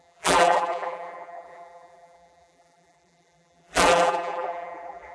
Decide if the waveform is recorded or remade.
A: remade